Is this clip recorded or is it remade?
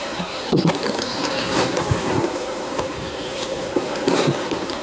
remade